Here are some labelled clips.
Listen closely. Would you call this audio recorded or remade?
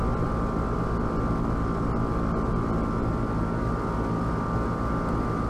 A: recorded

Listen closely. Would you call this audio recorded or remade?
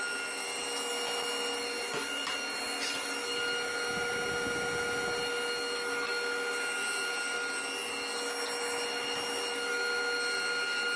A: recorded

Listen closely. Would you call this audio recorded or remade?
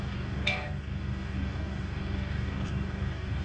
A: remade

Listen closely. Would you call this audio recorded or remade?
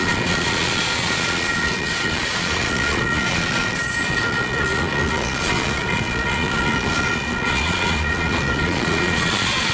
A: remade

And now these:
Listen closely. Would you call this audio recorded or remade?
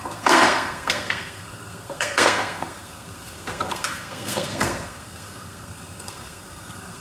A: remade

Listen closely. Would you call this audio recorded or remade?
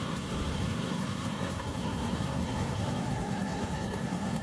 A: remade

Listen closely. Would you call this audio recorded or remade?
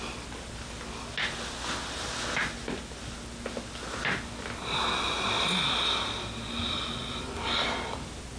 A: recorded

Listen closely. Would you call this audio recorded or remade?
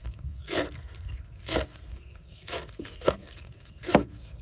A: remade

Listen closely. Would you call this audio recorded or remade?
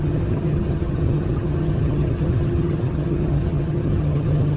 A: remade